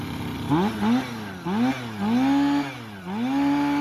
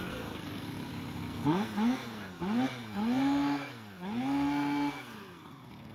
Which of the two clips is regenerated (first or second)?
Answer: second